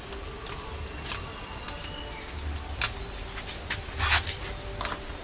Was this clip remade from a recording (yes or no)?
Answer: no